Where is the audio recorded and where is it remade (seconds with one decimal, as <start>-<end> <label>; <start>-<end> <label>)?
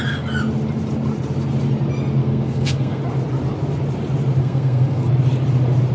0.0-2.2 recorded; 2.2-3.0 remade; 3.0-4.4 recorded; 4.4-5.1 remade; 5.1-5.9 recorded